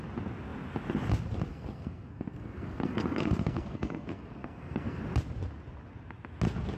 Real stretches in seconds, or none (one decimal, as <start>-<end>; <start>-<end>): 0.0-1.5; 5.0-6.8